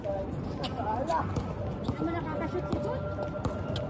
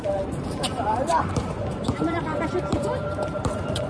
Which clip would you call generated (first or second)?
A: second